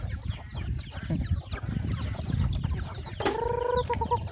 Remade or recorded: recorded